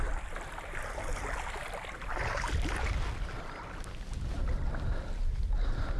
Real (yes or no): yes